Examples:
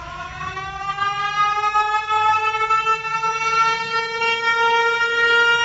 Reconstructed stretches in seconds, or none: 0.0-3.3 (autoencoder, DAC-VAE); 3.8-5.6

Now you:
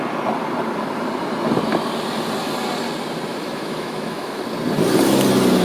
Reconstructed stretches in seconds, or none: 3.3-4.4 (autoencoder, DAC-VAE)

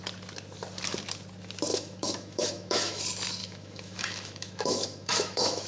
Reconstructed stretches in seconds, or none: 1.7-3.0 (autoencoder, DAC-VAE); 3.4-5.7